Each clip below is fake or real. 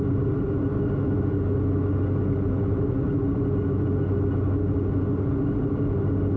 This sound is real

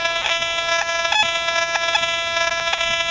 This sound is real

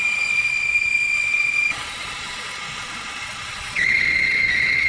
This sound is fake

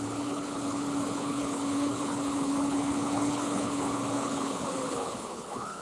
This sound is fake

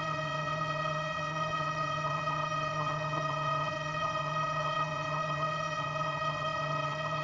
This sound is fake